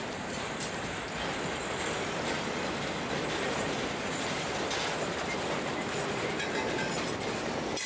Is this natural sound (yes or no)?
yes